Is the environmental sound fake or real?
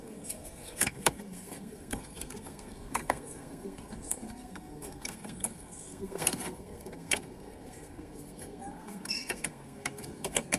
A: fake